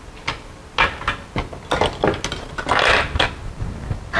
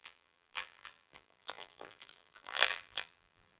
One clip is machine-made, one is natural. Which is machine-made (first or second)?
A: second